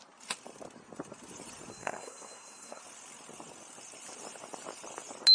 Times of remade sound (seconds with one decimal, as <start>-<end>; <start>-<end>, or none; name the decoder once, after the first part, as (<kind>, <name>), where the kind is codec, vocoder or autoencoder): 1.7-2.8 (codec, SNAC)